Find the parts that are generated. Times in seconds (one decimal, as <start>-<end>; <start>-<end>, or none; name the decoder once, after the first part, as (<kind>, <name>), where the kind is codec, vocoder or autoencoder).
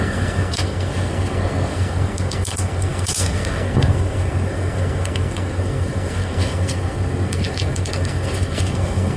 0.0-9.2 (codec, SNAC)